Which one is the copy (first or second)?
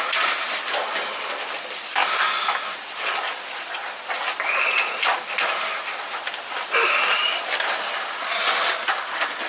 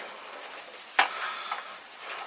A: first